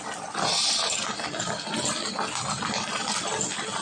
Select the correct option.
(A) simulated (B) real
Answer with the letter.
B